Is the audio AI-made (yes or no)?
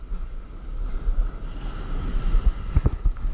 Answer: no